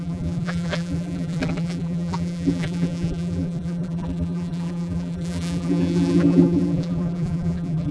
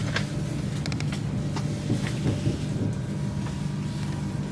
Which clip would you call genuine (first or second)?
second